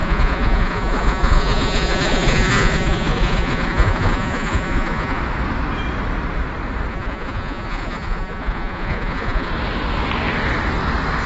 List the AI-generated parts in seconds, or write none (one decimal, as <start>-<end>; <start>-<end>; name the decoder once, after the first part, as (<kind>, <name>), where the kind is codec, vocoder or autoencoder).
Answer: 0.0-5.2 (vocoder, Vocos); 6.9-9.5